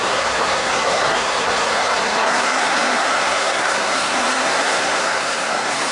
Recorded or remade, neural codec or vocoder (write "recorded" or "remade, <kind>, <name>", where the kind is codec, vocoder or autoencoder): remade, codec, SNAC